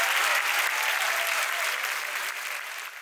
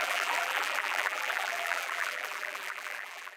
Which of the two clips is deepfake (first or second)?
second